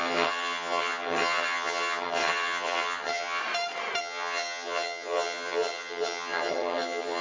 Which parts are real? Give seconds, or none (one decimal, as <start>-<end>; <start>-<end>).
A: 3.4-4.0